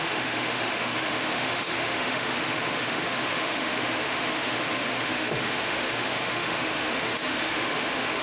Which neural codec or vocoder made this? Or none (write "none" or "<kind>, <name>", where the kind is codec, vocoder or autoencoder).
autoencoder, DAC-VAE